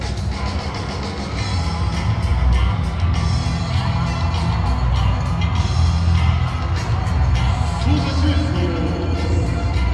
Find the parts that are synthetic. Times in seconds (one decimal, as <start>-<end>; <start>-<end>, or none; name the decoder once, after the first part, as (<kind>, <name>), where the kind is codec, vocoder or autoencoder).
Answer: none